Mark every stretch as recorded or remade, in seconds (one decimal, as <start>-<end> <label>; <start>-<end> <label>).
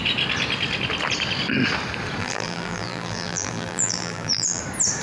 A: 0.0-2.2 recorded; 2.2-4.6 remade; 4.6-5.0 recorded